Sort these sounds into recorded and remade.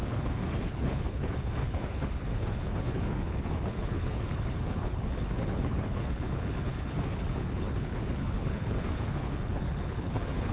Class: remade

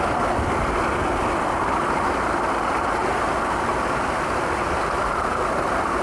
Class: recorded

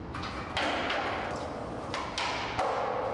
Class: recorded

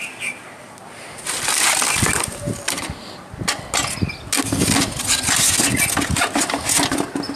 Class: recorded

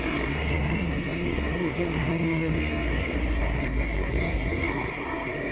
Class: remade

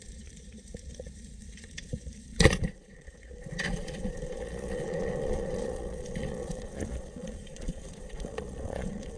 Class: remade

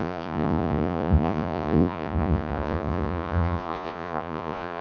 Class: remade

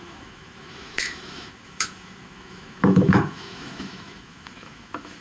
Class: remade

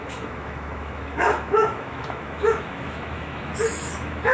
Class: remade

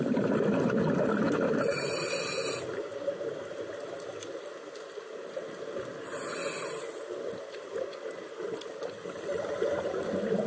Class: recorded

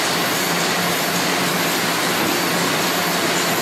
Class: recorded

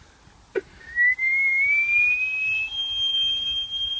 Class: recorded